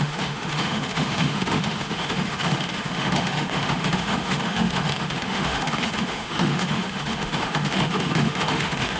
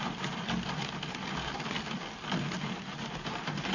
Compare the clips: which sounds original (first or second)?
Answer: second